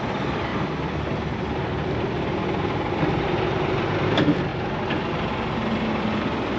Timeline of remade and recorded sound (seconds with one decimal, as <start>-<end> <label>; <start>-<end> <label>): 0.0-6.6 recorded